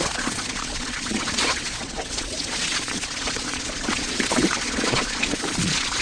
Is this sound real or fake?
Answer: fake